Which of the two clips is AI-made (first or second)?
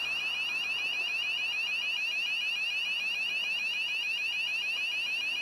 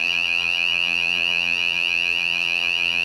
second